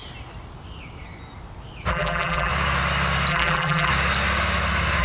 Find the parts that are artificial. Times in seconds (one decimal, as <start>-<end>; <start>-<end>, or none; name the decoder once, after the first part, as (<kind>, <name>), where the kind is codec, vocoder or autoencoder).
1.9-2.5 (vocoder, BigVGAN v2); 3.3-3.9